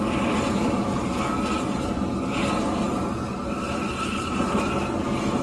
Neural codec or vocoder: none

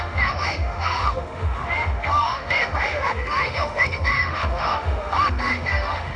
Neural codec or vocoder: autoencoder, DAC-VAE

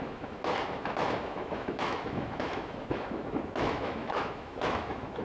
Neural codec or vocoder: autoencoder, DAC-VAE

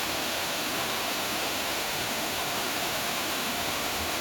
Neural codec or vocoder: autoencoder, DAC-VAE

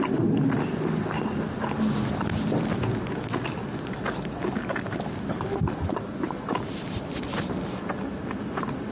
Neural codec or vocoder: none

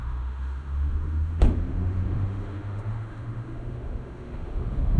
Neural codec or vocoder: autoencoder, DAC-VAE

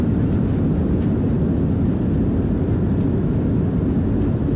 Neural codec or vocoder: none